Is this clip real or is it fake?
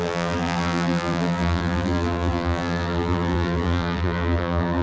fake